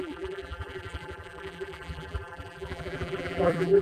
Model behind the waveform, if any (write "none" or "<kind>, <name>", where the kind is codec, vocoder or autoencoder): vocoder, BigVGAN v2